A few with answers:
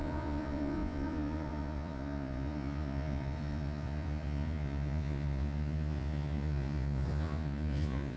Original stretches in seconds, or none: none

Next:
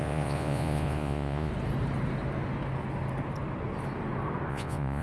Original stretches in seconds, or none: 1.5-4.5

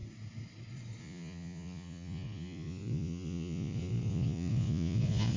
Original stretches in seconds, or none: 0.0-1.0

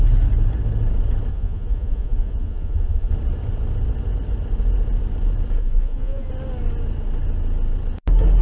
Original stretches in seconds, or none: 0.0-1.3; 3.1-5.6; 6.3-8.4

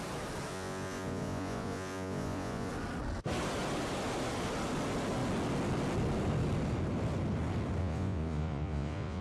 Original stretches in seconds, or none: 0.0-0.5; 2.7-7.8

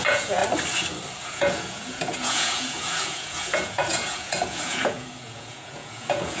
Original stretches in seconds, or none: 0.4-1.2

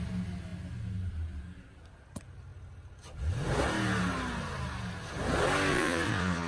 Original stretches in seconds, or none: 0.0-5.7